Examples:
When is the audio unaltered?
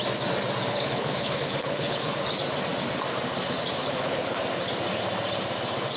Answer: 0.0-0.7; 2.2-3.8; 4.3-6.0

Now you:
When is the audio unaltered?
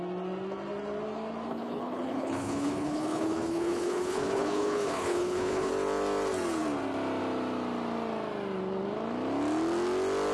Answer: 0.0-1.5; 5.7-10.3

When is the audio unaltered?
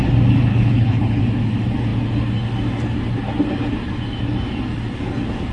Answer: 0.0-0.5; 1.2-5.5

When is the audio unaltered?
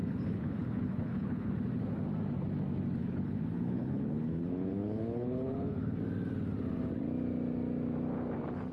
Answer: 1.5-3.0; 6.0-8.7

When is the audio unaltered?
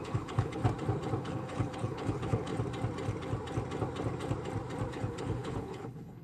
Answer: 0.6-1.2; 2.5-4.9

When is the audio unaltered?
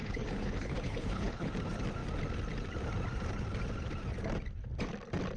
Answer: 1.5-5.4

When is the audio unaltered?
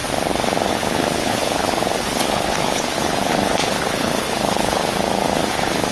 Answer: 0.0-0.7; 4.9-5.5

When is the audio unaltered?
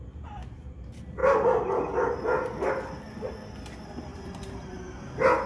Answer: 0.0-5.5